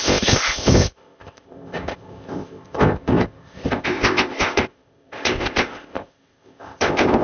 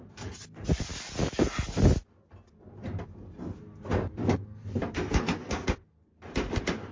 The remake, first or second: first